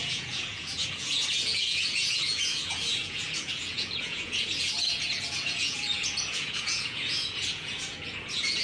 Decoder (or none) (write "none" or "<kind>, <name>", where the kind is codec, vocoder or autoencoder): vocoder, Vocos